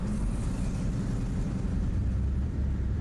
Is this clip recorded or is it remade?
remade